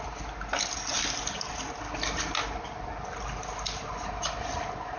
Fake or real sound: real